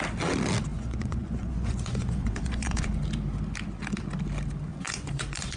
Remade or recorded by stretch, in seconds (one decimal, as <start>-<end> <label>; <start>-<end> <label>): 0.0-0.7 recorded; 0.7-3.0 remade; 3.0-4.7 recorded; 4.7-5.6 remade